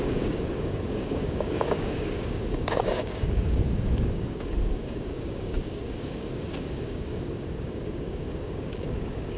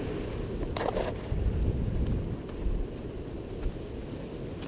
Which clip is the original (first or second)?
second